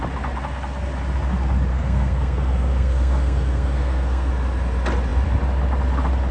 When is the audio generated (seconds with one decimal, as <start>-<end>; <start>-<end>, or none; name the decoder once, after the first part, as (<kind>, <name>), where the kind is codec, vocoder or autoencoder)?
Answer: 1.7-4.3 (codec, SNAC)